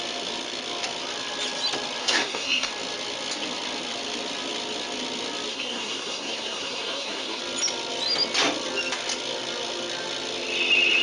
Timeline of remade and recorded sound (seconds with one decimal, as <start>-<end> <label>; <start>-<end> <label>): 0.0-2.0 recorded; 2.0-2.7 remade; 2.7-5.5 recorded; 5.5-7.4 remade; 7.4-11.0 recorded